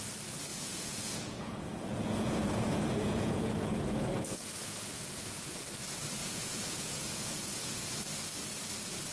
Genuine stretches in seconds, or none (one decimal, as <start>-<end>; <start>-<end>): 0.0-0.5; 5.6-6.2; 8.0-9.1